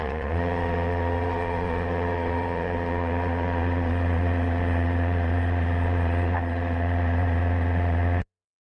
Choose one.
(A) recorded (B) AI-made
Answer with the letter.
B